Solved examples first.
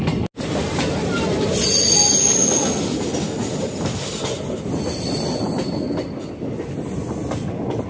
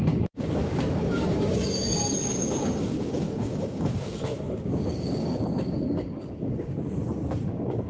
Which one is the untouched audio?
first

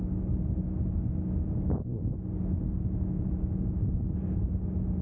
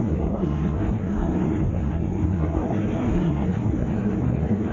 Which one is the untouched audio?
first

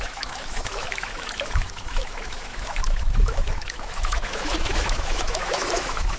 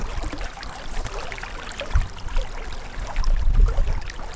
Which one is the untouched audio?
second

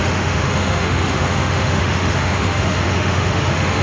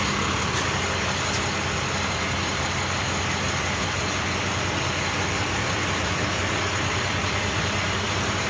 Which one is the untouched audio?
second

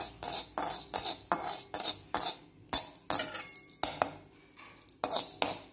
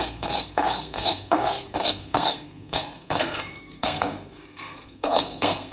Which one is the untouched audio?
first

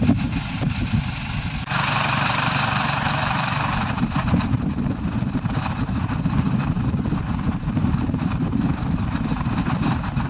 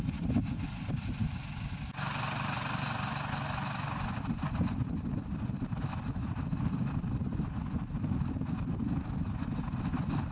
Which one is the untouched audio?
second